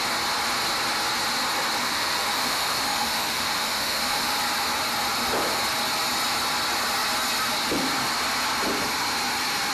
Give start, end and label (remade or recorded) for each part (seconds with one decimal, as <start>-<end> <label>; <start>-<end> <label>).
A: 0.0-1.8 recorded; 1.8-4.3 remade; 4.3-9.7 recorded